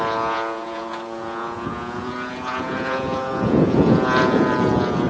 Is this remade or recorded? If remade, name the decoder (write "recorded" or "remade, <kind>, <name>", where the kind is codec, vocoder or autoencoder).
remade, vocoder, Vocos